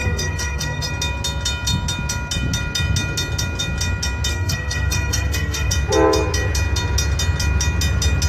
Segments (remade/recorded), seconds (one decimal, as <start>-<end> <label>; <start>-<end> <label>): 0.0-0.9 remade; 0.9-4.3 recorded; 4.3-5.7 remade; 5.7-8.3 recorded